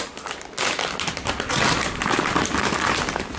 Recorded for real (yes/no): yes